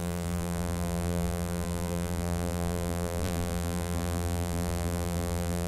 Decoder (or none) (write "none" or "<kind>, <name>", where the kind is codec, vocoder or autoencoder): vocoder, BigVGAN v2